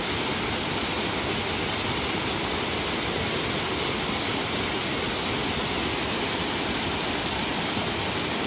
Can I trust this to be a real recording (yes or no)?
yes